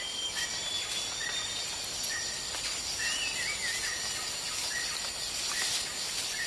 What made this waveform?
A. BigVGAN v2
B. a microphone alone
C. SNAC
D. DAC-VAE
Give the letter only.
B